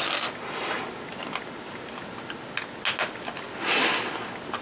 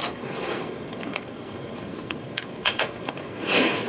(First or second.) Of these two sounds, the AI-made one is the second